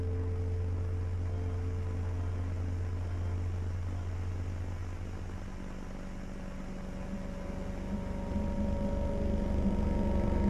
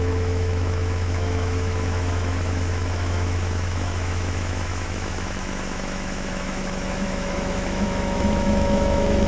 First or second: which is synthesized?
second